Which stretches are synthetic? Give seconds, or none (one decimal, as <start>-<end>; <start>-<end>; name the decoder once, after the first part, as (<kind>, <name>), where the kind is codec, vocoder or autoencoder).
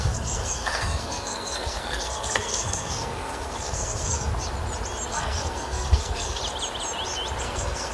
0.0-4.3 (codec, SNAC); 5.1-6.4; 7.4-7.9